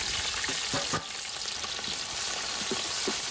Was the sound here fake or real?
real